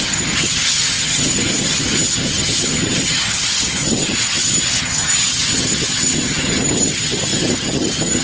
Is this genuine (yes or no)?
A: no